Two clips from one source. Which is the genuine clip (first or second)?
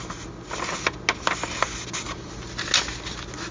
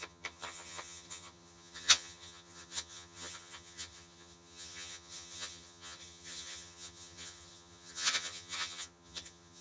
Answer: first